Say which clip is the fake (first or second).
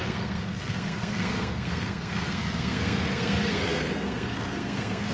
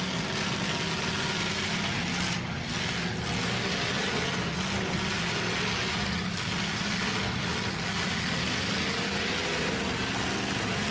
first